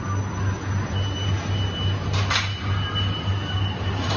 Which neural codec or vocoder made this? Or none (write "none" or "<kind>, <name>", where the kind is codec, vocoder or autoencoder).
none